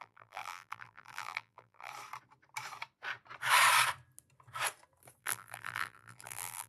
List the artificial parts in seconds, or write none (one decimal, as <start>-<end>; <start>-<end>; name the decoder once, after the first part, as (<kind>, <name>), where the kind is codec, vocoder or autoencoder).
0.0-1.9 (vocoder, BigVGAN v2); 5.2-6.7